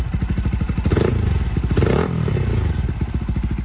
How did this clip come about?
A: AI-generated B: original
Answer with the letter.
B